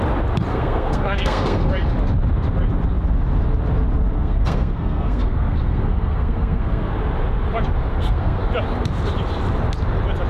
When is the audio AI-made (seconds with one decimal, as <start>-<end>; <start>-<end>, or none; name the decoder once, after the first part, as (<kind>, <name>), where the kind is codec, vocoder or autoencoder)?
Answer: 0.5-1.7 (codec, SNAC); 4.1-6.9; 7.9-8.4